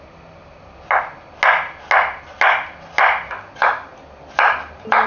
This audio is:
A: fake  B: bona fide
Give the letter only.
B